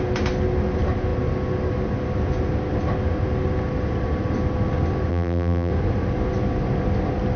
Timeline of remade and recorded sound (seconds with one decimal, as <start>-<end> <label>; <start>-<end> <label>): 0.0-5.1 recorded; 5.1-5.7 remade; 5.7-7.4 recorded